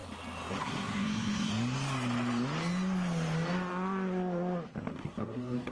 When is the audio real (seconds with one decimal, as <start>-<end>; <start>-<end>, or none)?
0.0-0.6; 1.5-4.9